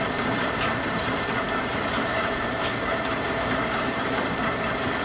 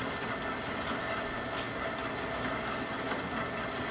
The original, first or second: second